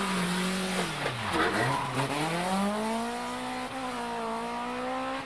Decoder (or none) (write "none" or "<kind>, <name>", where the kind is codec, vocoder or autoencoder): none